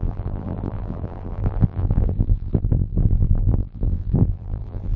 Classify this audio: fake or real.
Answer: fake